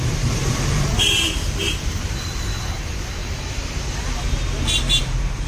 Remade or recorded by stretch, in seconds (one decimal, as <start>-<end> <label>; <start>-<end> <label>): 0.0-3.2 remade; 3.2-5.0 recorded; 5.0-5.5 remade